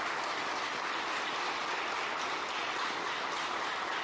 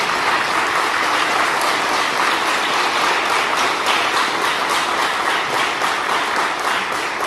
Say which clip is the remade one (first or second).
first